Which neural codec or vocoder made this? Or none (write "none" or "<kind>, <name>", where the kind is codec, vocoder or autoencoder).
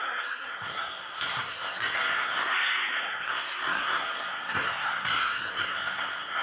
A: codec, SNAC